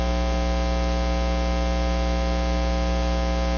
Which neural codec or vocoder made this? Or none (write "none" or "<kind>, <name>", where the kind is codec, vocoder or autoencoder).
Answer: none